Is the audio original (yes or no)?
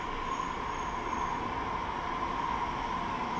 yes